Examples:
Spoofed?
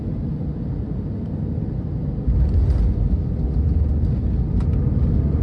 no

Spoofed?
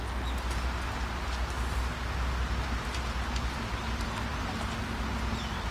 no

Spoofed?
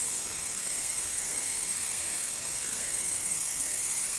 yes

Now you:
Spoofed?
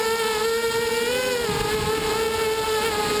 no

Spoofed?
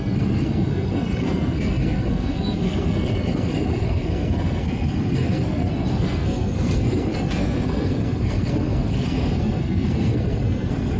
yes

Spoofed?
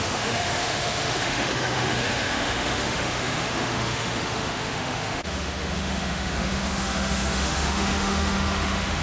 yes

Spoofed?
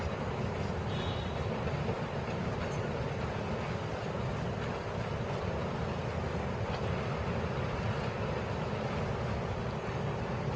no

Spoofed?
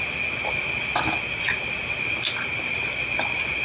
no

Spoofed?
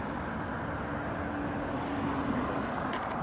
no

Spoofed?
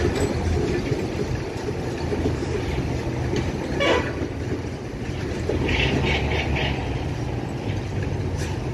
no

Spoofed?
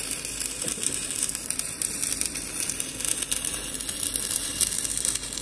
no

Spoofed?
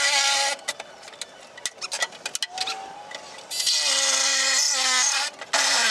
no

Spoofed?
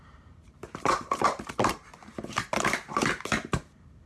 yes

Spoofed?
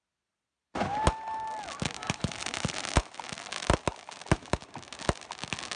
no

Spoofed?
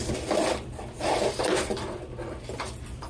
yes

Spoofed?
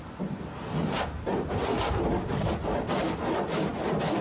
no